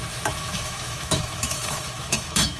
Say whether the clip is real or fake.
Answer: fake